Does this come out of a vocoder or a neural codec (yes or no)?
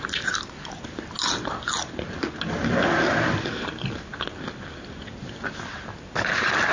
no